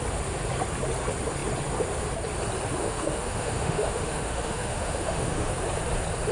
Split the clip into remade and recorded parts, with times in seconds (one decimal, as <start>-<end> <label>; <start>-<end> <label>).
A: 0.0-2.8 recorded; 2.8-5.5 remade; 5.5-6.3 recorded